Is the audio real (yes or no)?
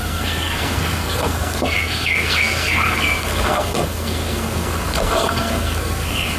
no